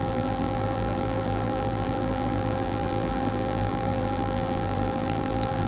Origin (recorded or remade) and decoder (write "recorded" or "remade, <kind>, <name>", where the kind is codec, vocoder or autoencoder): remade, vocoder, BigVGAN v2